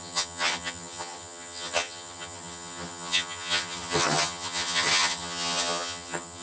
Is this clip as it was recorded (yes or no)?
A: no